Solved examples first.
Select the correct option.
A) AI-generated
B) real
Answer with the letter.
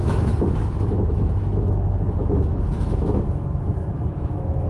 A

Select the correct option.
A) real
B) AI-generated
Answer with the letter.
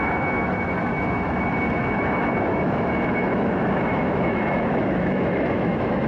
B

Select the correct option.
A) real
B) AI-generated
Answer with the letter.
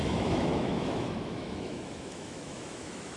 B